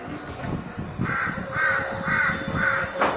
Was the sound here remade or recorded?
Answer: recorded